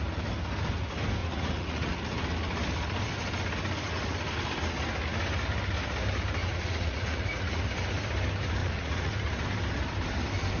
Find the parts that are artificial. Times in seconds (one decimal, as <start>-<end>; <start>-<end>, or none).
1.2-1.9; 6.4-7.6; 8.6-9.1